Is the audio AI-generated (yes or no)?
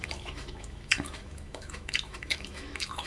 yes